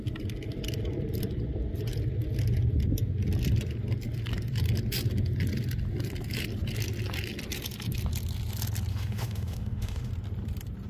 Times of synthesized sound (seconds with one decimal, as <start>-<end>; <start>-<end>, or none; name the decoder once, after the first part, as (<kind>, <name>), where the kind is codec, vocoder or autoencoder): 8.9-10.1 (autoencoder, DAC-VAE)